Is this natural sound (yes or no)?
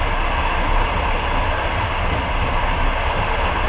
yes